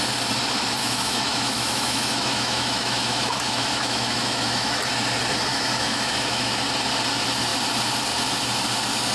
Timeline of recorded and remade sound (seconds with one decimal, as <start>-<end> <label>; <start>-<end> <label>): 0.0-0.8 recorded; 0.8-4.8 remade; 4.8-5.5 recorded; 5.5-6.6 remade; 6.6-9.1 recorded